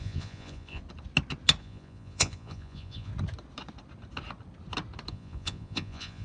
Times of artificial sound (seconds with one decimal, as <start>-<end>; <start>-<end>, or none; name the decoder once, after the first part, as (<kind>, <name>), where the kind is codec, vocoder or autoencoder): 0.0-0.8 (vocoder, Vocos); 1.6-3.1; 5.1-6.2